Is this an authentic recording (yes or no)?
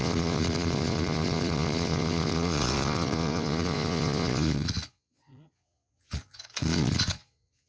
no